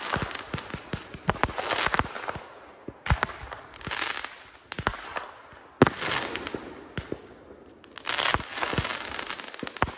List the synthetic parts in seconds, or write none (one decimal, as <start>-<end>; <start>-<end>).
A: 1.0-1.6